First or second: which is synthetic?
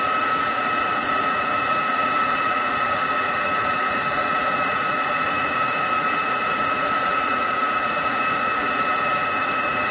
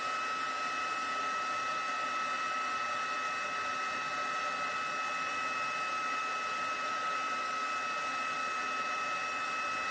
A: first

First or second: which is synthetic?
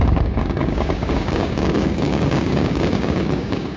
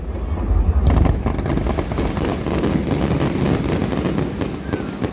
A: first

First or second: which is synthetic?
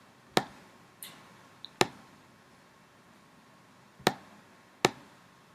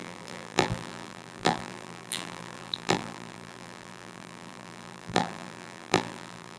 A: second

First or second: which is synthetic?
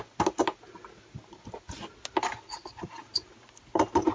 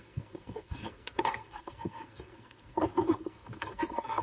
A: second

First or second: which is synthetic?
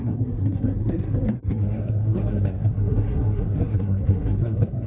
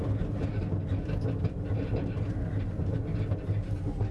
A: first